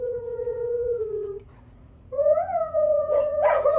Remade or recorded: remade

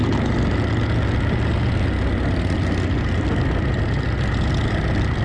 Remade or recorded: recorded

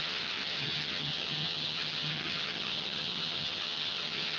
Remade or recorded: remade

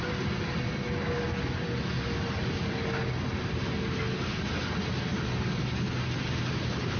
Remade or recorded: recorded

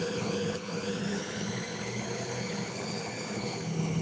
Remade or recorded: remade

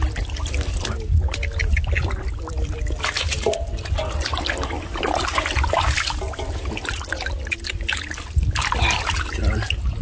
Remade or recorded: recorded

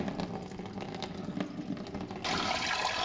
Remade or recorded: recorded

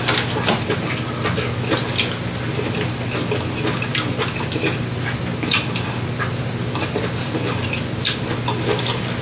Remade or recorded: recorded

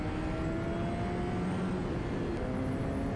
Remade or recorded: recorded